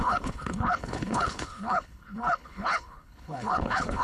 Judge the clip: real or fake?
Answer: fake